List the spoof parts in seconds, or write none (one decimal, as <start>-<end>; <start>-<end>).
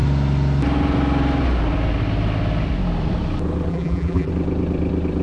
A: 3.7-4.3